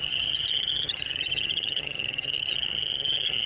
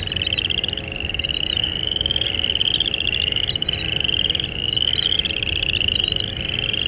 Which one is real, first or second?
second